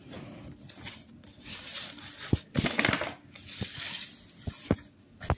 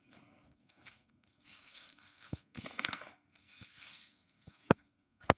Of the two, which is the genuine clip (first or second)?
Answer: first